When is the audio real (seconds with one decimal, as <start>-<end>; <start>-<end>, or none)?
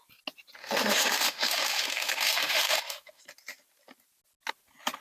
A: 0.0-0.6; 3.2-5.0